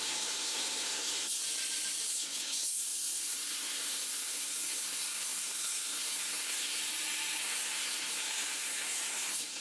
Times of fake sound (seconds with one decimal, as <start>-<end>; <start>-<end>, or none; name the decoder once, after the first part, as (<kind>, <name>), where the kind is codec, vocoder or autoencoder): 0.0-1.4 (codec, SNAC); 2.1-6.8; 7.4-9.6